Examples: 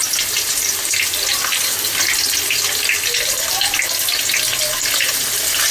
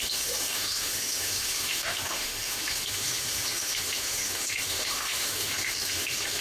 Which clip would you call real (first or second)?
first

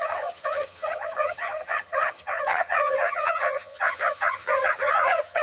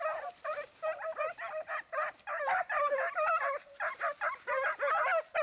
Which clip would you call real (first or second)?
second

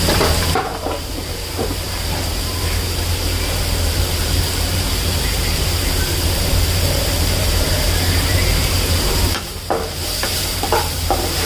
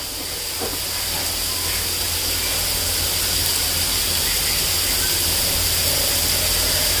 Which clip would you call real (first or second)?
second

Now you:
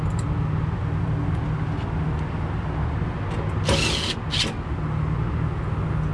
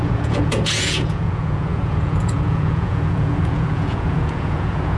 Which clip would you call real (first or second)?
first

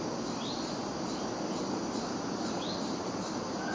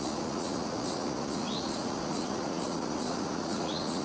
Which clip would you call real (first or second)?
first